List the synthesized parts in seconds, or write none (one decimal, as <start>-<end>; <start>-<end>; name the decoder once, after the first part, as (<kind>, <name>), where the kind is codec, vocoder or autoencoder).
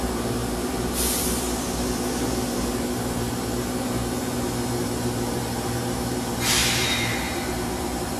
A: 0.0-8.2 (vocoder, BigVGAN v2)